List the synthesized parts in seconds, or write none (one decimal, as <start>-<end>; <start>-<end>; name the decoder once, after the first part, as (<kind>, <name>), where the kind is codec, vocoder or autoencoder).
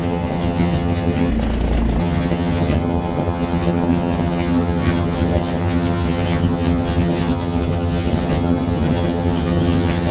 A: 0.0-1.3 (vocoder, HiFi-GAN); 2.0-10.1